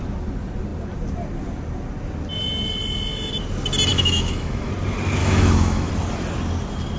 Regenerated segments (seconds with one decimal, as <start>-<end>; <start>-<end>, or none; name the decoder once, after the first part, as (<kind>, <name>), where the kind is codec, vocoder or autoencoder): 3.9-4.7 (autoencoder, DAC-VAE); 5.2-5.9